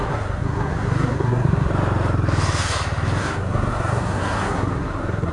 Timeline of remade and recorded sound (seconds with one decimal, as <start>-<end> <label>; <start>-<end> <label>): 0.0-1.7 remade; 1.7-3.2 recorded; 3.2-5.3 remade